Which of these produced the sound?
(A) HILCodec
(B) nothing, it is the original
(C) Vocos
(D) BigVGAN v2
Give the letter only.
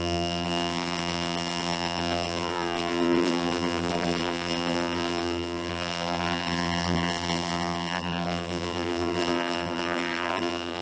D